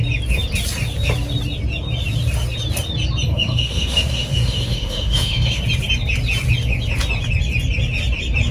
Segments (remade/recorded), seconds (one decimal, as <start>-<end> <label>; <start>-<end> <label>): 0.0-3.3 recorded; 3.3-5.6 remade; 5.6-8.5 recorded